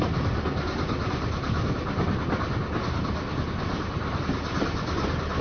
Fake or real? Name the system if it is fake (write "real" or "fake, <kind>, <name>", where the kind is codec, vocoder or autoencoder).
real